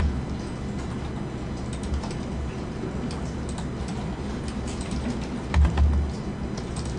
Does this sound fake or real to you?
real